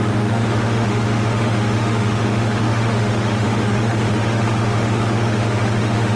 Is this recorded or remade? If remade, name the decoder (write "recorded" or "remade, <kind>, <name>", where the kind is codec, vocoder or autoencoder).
remade, autoencoder, DAC-VAE